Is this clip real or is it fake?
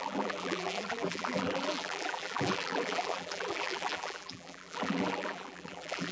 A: fake